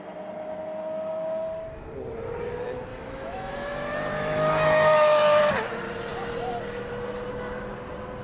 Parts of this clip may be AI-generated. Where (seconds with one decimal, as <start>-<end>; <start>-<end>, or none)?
2.9-5.4